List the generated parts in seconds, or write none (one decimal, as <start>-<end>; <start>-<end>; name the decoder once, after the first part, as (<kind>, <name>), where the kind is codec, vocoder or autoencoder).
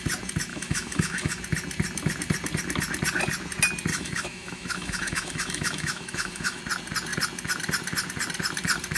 0.5-1.4 (autoencoder, DAC-VAE); 3.9-6.6